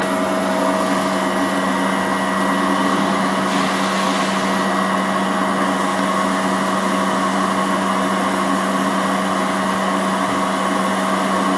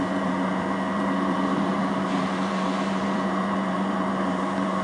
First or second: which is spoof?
second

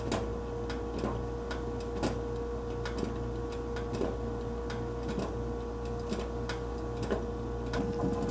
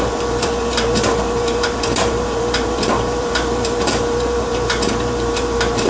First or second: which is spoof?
second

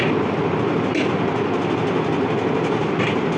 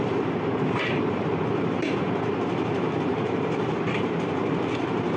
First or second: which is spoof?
second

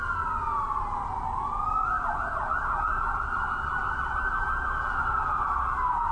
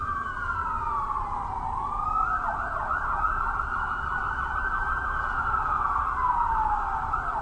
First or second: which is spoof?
second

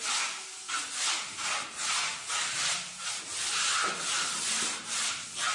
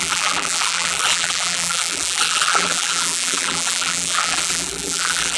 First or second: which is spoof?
second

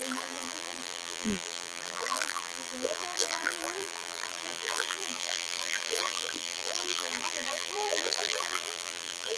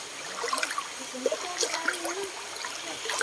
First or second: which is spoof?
first